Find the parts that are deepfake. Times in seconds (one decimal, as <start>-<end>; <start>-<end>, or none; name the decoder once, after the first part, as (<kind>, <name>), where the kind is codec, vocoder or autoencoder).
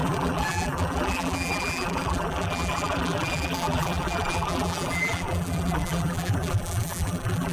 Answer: 0.0-7.5 (vocoder, BigVGAN v2)